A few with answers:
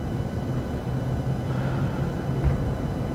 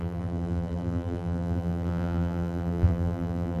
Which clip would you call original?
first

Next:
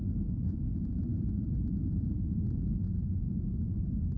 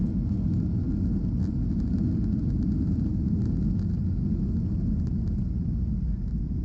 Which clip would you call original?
second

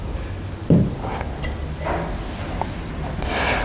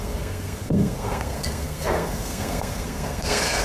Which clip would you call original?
first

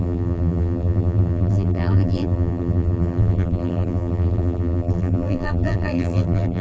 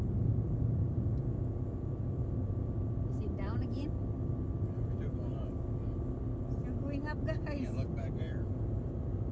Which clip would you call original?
second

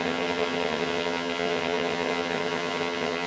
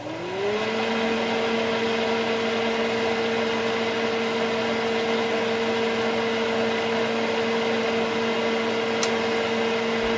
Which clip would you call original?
second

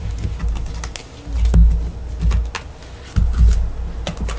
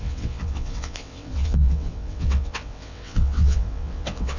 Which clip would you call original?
first